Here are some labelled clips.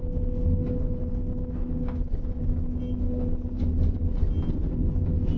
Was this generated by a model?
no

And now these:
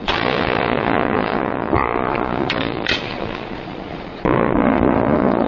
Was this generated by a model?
yes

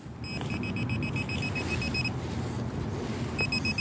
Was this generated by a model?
no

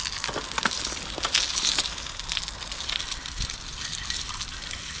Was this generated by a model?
no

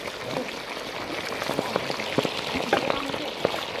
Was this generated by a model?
no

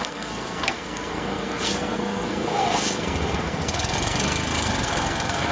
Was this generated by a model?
yes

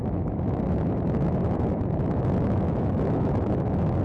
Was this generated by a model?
yes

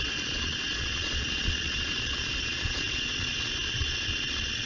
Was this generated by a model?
yes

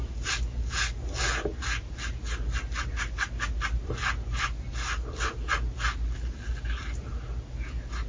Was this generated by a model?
no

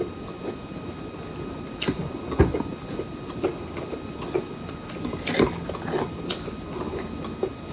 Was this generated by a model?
no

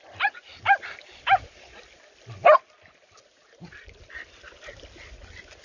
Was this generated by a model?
no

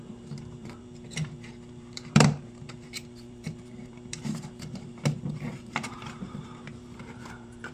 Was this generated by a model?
yes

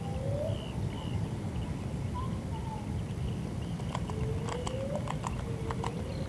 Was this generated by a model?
no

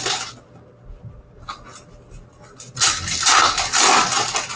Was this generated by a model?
no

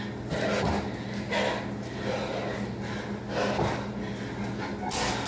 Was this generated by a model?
no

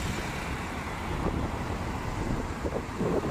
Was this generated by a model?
yes